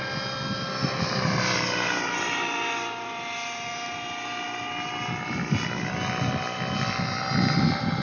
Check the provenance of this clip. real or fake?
real